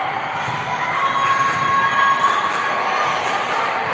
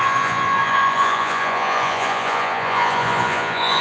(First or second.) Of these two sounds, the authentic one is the first